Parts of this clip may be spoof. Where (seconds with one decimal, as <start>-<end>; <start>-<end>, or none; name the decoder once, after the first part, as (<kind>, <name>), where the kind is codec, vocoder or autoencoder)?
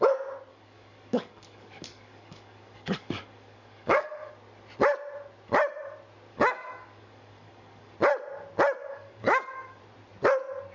0.5-4.3 (codec, DAC); 6.3-7.9; 8.8-9.8